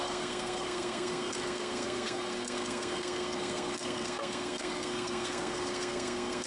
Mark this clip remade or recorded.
remade